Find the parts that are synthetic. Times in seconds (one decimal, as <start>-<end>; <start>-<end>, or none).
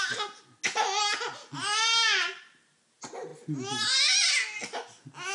none